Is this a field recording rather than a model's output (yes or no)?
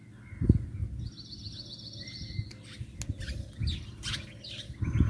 yes